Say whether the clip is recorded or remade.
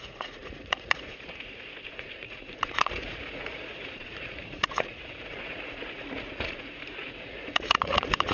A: remade